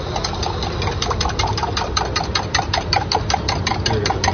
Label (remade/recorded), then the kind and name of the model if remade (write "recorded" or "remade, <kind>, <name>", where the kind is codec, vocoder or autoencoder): recorded